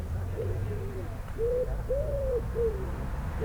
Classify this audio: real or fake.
fake